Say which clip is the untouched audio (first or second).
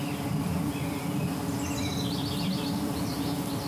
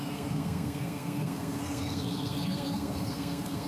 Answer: first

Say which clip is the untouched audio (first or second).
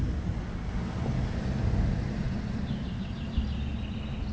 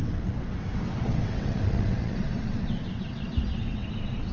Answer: first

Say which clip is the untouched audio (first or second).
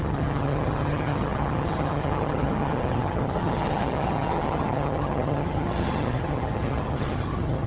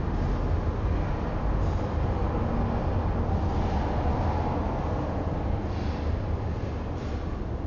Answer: second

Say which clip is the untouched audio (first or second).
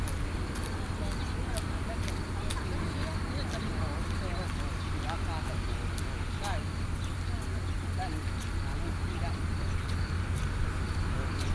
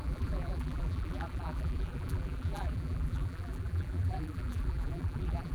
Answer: first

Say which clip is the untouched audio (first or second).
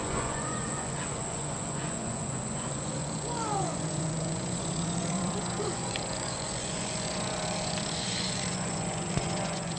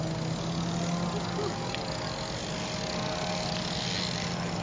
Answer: second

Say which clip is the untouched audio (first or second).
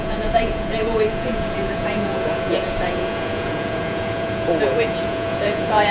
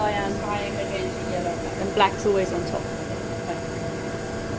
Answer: second